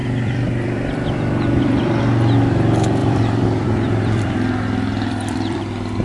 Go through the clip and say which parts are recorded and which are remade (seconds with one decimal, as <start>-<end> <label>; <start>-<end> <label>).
0.0-2.0 remade; 2.0-3.0 recorded; 3.0-5.6 remade; 5.6-6.0 recorded